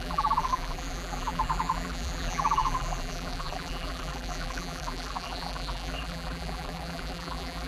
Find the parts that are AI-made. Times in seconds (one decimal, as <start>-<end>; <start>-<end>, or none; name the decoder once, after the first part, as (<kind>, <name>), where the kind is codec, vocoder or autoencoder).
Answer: 0.0-7.7 (vocoder, BigVGAN v2)